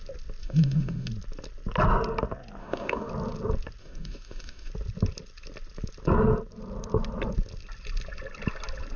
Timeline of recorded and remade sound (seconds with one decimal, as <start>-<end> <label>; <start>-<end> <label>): 0.0-0.4 recorded; 0.4-1.1 remade; 1.1-2.6 recorded; 2.6-3.1 remade; 3.1-3.8 recorded; 3.8-4.7 remade; 4.7-9.0 recorded